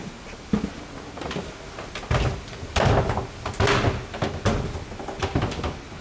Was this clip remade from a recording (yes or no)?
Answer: no